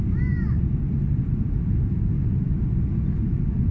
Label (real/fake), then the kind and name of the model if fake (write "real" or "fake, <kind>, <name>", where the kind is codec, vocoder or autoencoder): real